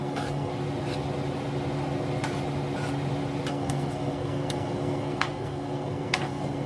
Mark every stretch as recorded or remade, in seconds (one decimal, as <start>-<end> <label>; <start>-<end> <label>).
0.0-0.5 remade; 0.5-3.5 recorded; 3.5-6.7 remade